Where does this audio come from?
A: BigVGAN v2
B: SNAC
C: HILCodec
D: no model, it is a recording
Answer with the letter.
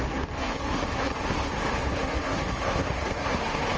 B